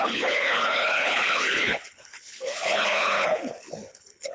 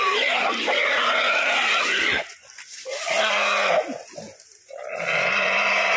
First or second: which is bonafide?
second